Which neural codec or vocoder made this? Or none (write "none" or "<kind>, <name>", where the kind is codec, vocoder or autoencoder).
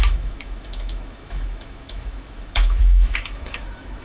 autoencoder, DAC-VAE